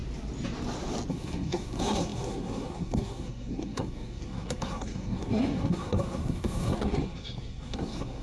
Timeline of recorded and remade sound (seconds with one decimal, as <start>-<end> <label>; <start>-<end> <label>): 0.0-1.1 recorded; 1.1-8.2 remade